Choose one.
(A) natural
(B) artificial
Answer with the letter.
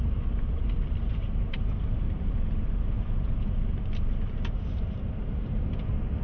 B